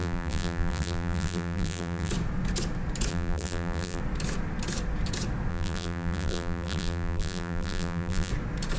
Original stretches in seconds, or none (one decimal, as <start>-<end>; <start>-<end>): 2.1-3.1; 4.0-5.5; 8.3-8.8